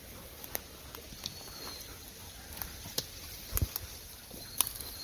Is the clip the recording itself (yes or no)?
yes